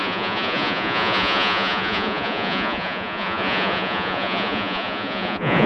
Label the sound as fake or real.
fake